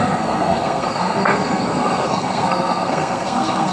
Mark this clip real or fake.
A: fake